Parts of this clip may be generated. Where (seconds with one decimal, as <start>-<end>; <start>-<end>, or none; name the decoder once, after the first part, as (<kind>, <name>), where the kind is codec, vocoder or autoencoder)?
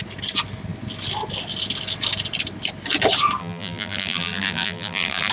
3.4-5.3 (vocoder, BigVGAN v2)